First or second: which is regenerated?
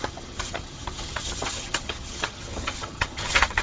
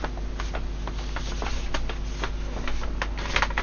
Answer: first